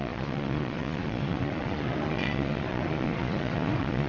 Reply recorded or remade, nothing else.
remade